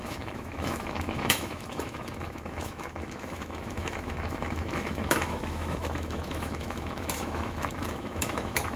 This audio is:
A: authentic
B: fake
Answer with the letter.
B